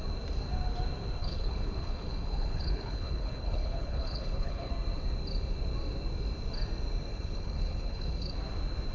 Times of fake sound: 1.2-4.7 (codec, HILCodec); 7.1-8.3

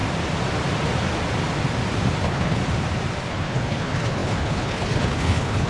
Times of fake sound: 2.2-2.6 (codec, HILCodec); 3.3-5.7

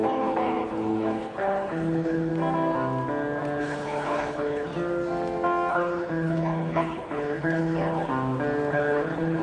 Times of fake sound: 0.0-2.3 (codec, HILCodec); 3.6-4.7; 5.7-8.1; 8.7-9.4

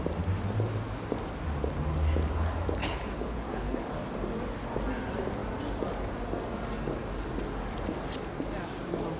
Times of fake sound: 2.8-3.8 (codec, HILCodec)

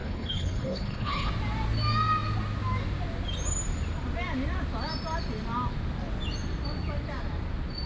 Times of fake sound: 0.0-1.3 (codec, HILCodec)

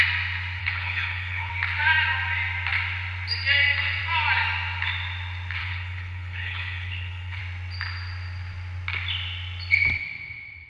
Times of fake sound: 0.6-1.5 (codec, HILCodec); 5.6-7.4

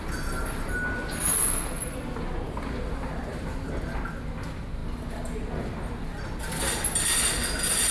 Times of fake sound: none

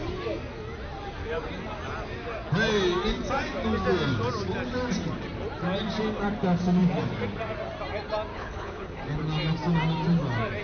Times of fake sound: 8.3-9.0 (codec, HILCodec)